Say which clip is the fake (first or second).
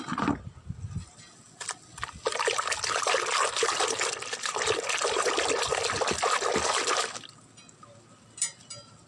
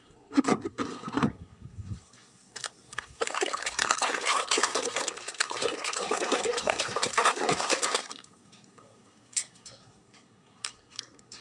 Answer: second